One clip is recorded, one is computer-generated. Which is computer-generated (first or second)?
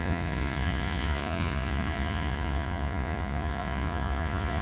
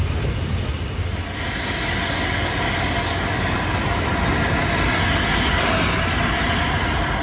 first